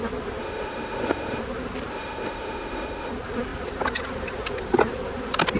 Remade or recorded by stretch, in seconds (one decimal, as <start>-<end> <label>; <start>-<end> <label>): 0.0-0.4 recorded; 0.4-1.4 remade; 1.4-1.9 recorded; 1.9-3.1 remade; 3.1-5.6 recorded